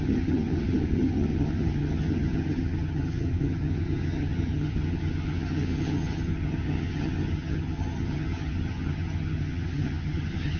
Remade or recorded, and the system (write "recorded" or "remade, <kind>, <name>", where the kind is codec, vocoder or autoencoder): remade, vocoder, HiFi-GAN